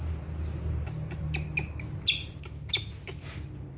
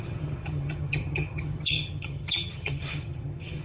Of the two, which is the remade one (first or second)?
second